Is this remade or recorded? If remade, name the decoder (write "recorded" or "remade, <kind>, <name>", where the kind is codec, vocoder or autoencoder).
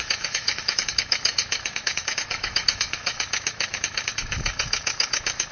remade, autoencoder, DAC-VAE